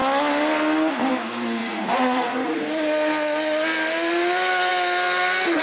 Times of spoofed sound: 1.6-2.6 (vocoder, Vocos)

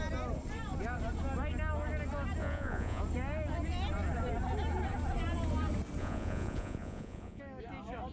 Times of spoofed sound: 2.4-3.0 (vocoder, Vocos); 6.0-7.4

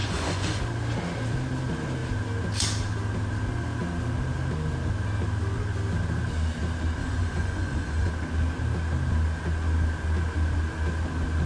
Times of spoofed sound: 0.0-0.6 (vocoder, Vocos); 7.0-8.1